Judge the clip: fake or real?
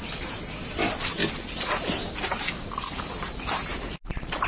real